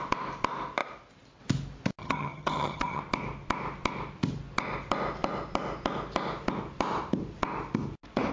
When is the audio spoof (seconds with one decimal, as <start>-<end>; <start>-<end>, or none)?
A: 2.0-3.0